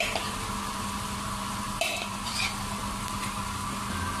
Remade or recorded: remade